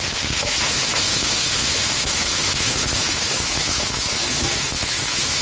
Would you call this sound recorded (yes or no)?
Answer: no